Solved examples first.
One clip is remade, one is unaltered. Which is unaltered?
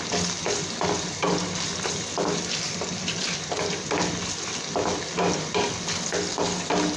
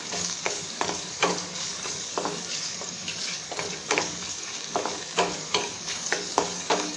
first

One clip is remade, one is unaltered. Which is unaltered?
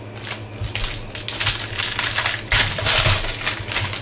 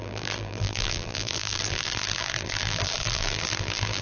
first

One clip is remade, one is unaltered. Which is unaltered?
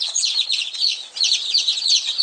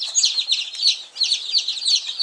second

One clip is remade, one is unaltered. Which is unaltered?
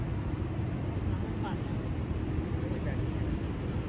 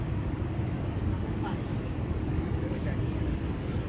first